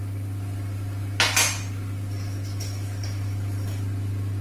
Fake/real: real